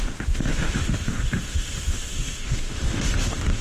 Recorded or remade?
remade